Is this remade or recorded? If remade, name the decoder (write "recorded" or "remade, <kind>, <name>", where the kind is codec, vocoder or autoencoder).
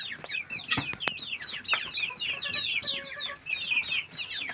recorded